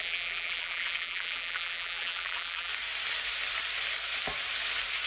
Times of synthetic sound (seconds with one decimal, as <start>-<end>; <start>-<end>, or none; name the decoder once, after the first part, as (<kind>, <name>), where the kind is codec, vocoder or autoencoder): 0.0-2.7 (vocoder, BigVGAN v2)